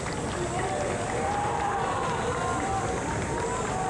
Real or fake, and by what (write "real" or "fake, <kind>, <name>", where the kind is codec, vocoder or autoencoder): real